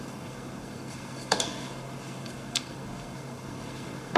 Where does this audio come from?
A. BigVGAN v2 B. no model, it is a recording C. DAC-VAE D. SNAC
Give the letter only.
D